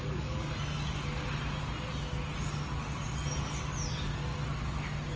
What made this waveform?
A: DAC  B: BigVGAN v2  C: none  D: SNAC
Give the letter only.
C